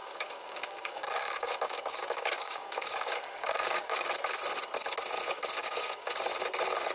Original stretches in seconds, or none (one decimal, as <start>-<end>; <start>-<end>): 4.1-5.6; 6.1-6.9